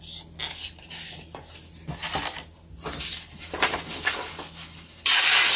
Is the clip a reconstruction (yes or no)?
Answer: no